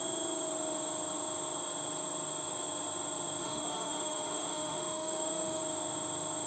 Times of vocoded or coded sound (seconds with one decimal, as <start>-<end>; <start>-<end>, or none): 3.4-5.6